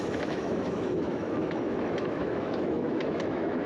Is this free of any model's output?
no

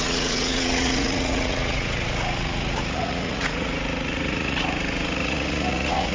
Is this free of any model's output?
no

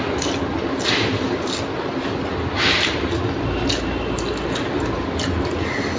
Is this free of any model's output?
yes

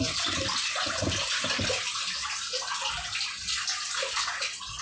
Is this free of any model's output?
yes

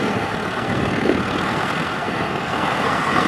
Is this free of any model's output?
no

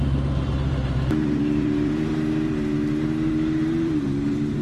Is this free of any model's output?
no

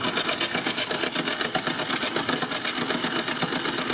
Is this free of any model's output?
yes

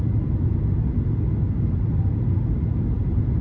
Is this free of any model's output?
yes